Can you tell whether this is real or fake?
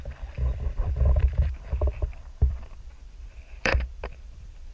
fake